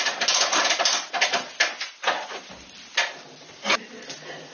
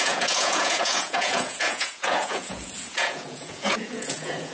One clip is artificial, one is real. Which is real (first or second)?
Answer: first